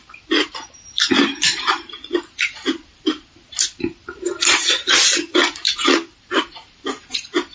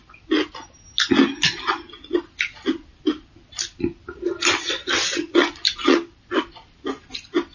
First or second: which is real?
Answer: second